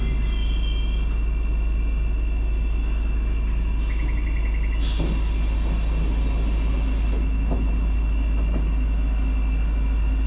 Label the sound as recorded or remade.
recorded